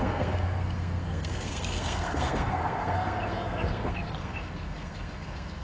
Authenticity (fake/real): fake